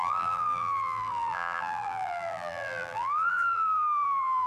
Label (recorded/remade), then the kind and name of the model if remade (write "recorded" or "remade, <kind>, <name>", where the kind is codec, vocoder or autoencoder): remade, vocoder, BigVGAN v2